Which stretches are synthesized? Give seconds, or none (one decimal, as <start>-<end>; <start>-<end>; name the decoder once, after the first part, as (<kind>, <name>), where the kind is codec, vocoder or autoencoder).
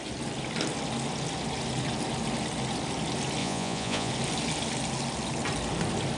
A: 3.4-4.1 (vocoder, Vocos)